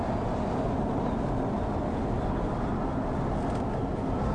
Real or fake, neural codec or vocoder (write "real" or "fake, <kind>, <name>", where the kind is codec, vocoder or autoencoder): real